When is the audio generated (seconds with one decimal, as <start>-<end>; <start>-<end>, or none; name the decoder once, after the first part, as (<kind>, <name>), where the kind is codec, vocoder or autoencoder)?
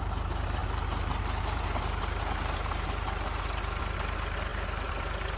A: none